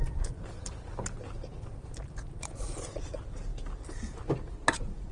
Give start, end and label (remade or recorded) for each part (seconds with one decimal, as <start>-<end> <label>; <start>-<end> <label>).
0.0-3.5 remade; 3.5-5.1 recorded